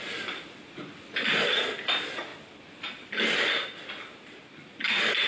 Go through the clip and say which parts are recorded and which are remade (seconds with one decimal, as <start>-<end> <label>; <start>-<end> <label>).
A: 0.0-5.3 recorded